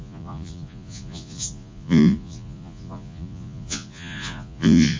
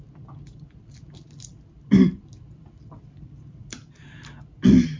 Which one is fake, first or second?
first